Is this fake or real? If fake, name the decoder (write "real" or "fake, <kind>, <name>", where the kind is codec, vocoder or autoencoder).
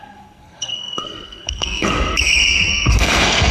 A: fake, codec, SNAC